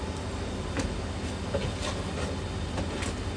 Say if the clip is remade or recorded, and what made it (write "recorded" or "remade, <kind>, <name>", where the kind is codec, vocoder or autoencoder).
recorded